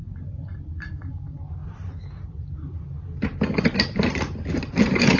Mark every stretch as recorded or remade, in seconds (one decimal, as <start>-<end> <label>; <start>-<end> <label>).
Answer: 0.0-1.6 remade; 1.6-4.7 recorded; 4.7-5.2 remade